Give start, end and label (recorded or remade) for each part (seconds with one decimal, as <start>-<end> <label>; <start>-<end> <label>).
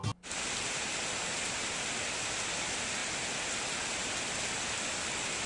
0.0-5.5 recorded